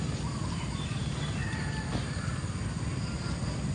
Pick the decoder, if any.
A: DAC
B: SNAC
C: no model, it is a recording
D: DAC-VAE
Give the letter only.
C